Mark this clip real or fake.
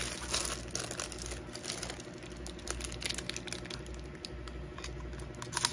real